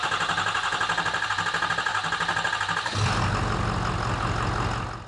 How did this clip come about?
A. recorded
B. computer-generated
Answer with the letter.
A